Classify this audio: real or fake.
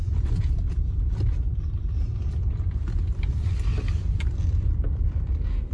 fake